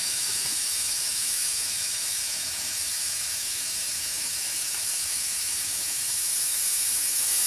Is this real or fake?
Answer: fake